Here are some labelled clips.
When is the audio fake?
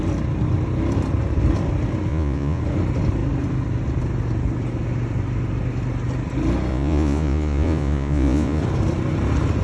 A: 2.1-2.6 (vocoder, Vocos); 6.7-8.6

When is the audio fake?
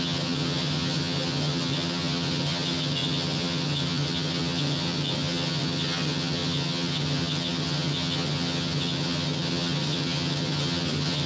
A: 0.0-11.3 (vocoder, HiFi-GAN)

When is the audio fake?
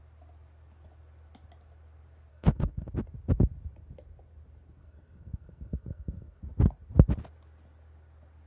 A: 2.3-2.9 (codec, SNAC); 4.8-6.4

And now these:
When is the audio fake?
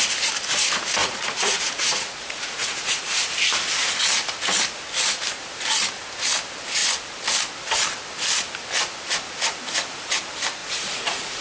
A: 1.0-3.2 (vocoder, Vocos); 10.6-11.4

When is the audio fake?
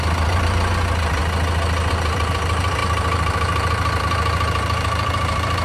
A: 0.0-1.2 (vocoder, BigVGAN v2); 1.9-5.6